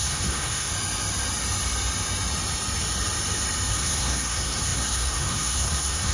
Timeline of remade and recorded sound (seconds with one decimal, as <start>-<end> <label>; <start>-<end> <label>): 0.0-0.7 remade; 0.7-3.7 recorded; 3.7-6.1 remade